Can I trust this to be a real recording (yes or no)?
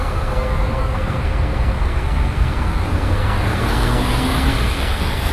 no